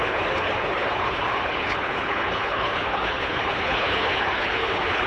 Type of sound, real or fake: fake